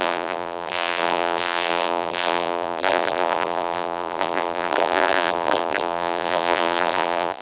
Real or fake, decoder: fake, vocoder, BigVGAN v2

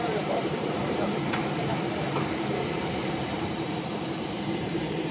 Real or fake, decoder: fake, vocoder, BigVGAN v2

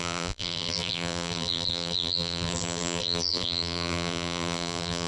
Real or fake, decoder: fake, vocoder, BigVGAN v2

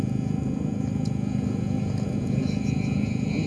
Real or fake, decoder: real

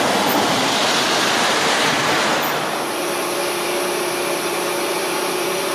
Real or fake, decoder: fake, vocoder, BigVGAN v2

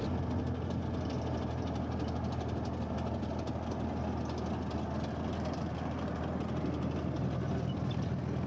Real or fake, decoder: real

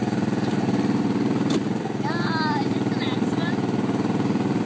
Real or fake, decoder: real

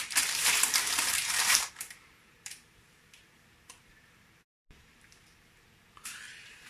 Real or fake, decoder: fake, vocoder, BigVGAN v2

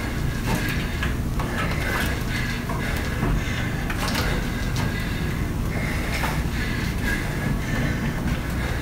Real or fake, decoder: real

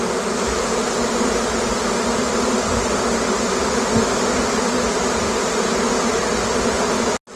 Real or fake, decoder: real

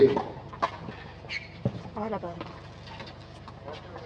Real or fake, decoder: real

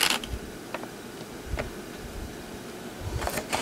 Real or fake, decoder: real